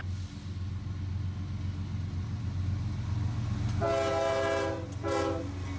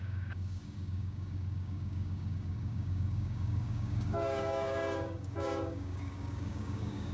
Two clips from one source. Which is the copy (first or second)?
second